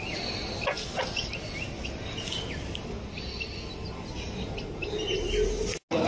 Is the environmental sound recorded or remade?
recorded